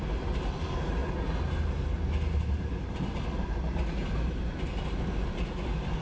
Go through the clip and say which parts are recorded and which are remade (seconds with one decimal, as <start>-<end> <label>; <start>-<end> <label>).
0.0-6.0 recorded